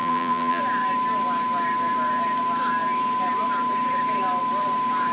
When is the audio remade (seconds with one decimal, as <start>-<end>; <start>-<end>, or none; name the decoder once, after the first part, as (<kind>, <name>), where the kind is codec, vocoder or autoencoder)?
0.0-0.6 (vocoder, BigVGAN v2)